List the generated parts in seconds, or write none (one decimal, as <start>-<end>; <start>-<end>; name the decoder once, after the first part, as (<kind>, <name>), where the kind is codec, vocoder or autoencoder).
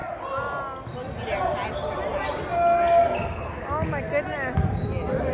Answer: none